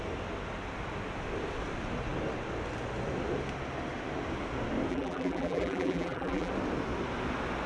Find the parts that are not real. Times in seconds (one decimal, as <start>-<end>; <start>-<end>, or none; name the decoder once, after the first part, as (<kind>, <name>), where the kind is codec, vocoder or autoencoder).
4.9-6.5 (vocoder, BigVGAN v2)